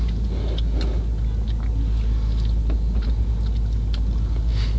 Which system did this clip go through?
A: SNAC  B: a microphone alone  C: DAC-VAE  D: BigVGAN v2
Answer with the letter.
B